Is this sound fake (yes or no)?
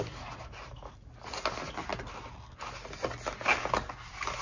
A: no